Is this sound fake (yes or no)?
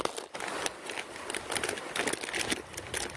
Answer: no